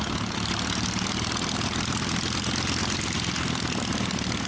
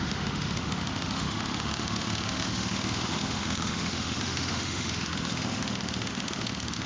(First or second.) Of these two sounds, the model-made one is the second